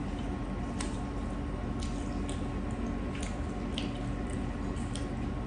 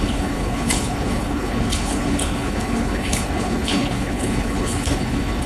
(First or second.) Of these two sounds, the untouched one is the first